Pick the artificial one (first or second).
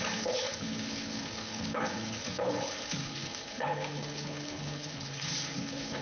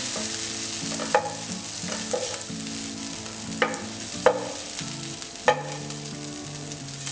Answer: first